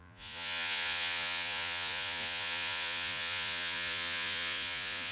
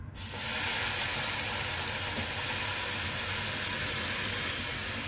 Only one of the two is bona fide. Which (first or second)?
second